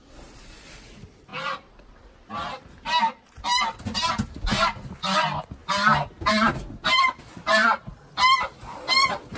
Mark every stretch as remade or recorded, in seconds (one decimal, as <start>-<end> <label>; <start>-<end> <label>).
0.0-9.4 recorded